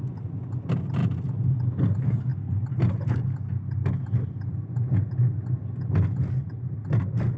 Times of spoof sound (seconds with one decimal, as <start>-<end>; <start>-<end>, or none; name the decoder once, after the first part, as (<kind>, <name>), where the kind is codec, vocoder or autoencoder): none